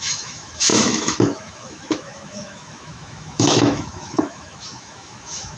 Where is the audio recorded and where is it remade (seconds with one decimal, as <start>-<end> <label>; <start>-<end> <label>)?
0.0-5.6 remade